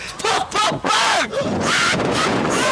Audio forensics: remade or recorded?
remade